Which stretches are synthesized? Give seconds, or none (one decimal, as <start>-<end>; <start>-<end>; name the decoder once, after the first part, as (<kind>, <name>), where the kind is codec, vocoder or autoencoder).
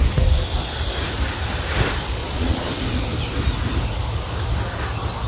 2.2-2.7 (vocoder, Vocos)